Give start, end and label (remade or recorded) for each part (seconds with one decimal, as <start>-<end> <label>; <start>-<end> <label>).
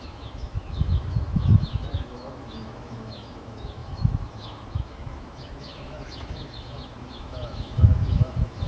0.0-8.7 remade